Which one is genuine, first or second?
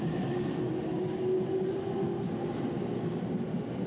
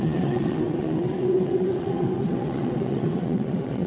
first